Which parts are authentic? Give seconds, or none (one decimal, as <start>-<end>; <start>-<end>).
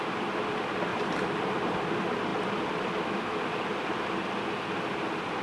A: 0.0-0.9; 1.6-5.4